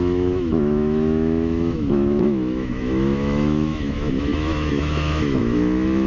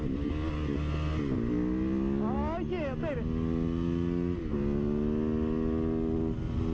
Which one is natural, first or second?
second